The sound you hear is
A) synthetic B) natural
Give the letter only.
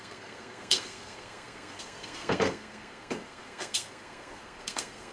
A